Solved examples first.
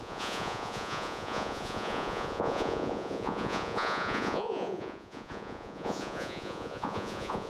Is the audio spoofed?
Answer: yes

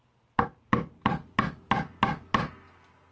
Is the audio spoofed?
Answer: no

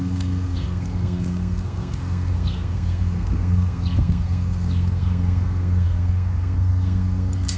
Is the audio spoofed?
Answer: yes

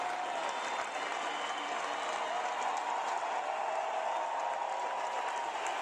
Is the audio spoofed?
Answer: no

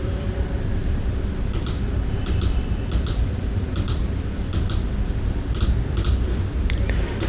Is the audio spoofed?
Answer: yes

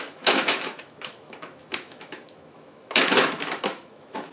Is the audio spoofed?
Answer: yes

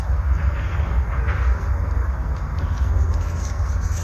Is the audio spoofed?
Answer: yes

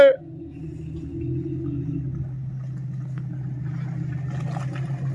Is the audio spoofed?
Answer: no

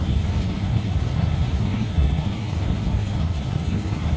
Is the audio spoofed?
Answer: yes